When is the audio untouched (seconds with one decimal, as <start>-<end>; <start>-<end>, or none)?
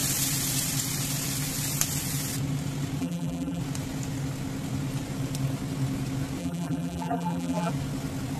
0.0-3.0; 3.6-6.4; 7.7-8.4